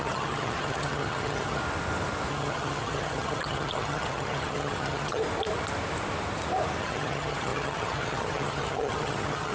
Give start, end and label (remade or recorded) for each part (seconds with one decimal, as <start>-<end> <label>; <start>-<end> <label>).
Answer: 0.0-1.6 remade; 1.6-2.3 recorded; 2.3-5.2 remade; 5.2-6.8 recorded; 6.8-9.5 remade